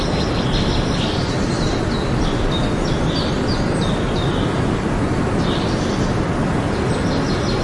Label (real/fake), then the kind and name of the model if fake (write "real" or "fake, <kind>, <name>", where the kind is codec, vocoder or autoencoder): real